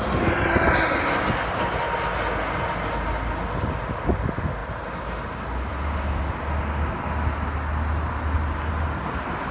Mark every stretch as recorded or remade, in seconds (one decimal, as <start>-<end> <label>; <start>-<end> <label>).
0.0-9.5 recorded

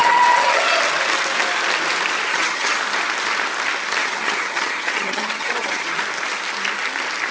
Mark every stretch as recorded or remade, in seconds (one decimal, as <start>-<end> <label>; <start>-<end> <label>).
0.0-0.6 remade; 0.6-2.3 recorded; 2.3-2.8 remade; 2.8-4.0 recorded; 4.0-6.0 remade; 6.0-7.3 recorded

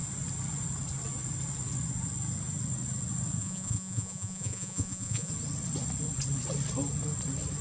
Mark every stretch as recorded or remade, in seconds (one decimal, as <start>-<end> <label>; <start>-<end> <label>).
0.0-3.4 recorded; 3.4-5.3 remade; 5.3-7.6 recorded

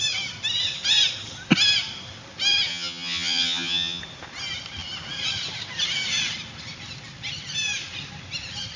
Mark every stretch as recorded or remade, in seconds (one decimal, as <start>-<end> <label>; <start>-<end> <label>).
0.0-2.7 recorded; 2.7-4.0 remade; 4.0-8.8 recorded

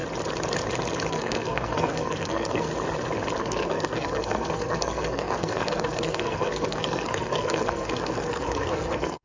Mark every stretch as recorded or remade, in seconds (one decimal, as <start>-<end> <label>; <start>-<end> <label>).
0.0-1.1 recorded; 1.1-2.7 remade; 2.7-3.4 recorded; 3.4-9.2 remade

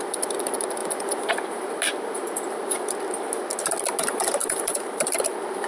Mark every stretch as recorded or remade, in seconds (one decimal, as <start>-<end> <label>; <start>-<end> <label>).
0.0-0.8 recorded; 0.8-1.3 remade; 1.3-4.4 recorded; 4.4-5.7 remade

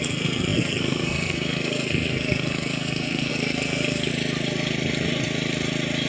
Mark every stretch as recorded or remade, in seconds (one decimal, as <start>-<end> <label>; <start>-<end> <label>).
0.0-4.1 remade; 4.1-6.1 recorded

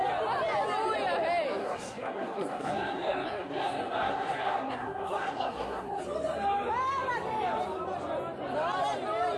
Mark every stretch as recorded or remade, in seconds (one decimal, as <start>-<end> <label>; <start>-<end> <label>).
0.0-1.6 recorded; 1.6-6.0 remade; 6.0-9.4 recorded